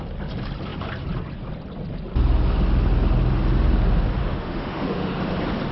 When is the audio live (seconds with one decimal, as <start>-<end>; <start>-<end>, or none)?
0.0-4.2; 5.2-5.7